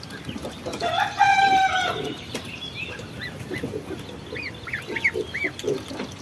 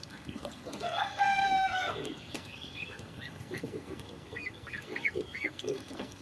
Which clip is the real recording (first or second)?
first